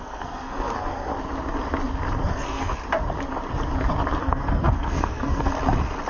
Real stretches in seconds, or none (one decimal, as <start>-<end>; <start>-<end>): 1.1-2.3; 2.7-4.2; 5.5-6.1